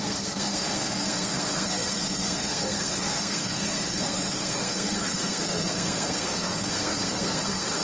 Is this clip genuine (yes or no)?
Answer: no